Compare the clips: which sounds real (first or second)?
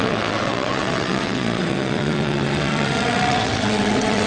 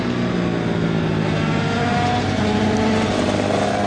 second